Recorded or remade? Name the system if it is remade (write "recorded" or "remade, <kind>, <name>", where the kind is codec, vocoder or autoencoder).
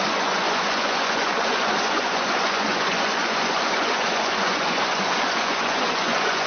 remade, vocoder, Vocos